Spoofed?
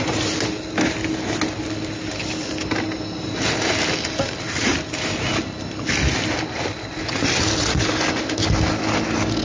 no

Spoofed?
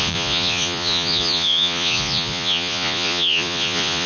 yes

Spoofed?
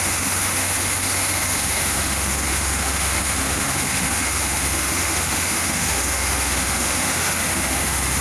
yes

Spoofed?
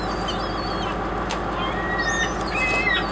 no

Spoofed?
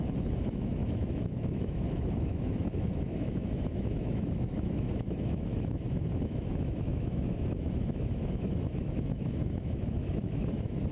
yes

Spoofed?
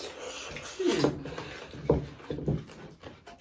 no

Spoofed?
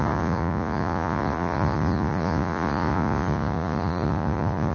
yes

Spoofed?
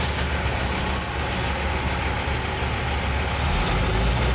no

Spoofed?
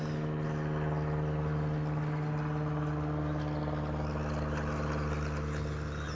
no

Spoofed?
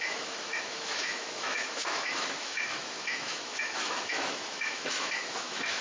yes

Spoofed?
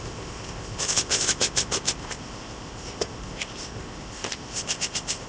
yes